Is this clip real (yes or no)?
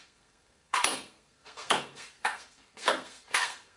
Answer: no